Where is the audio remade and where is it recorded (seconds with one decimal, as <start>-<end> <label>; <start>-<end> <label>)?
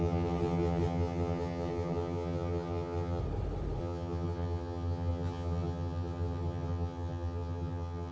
0.0-3.2 remade; 3.2-3.8 recorded; 3.8-8.1 remade